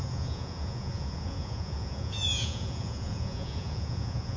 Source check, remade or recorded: remade